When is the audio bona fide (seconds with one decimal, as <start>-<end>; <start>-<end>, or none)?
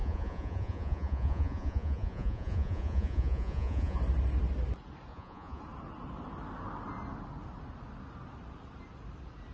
4.0-5.1; 5.6-9.5